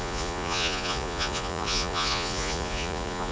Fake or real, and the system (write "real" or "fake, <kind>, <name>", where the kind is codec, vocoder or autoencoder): fake, vocoder, Vocos